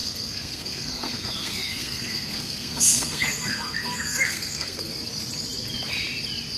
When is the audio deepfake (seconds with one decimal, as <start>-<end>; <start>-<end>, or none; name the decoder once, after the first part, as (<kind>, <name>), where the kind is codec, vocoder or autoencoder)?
0.0-4.9 (codec, SNAC)